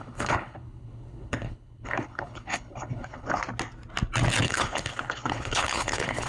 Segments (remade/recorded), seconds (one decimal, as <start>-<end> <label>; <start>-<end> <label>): 0.0-3.4 remade; 3.4-4.4 recorded; 4.4-6.3 remade